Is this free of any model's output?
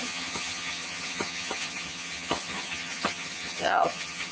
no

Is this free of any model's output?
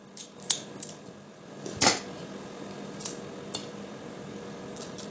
yes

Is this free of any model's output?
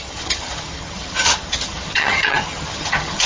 no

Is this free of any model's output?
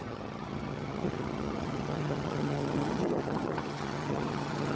no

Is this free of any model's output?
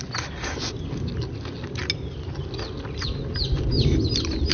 yes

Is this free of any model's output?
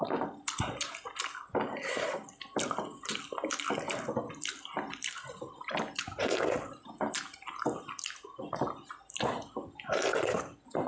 yes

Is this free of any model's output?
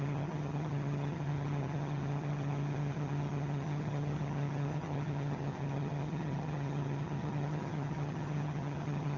no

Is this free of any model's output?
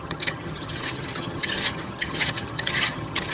no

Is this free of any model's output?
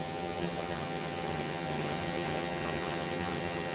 no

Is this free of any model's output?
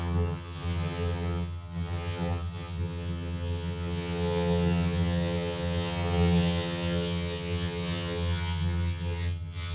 no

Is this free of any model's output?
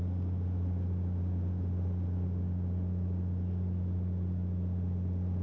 yes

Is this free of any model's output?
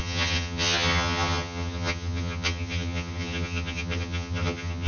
no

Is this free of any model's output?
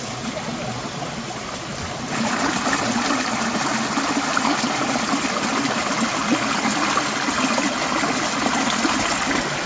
yes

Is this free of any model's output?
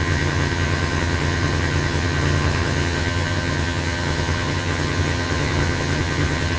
no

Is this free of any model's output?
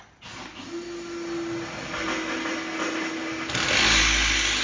yes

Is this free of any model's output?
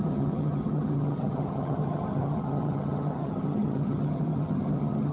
no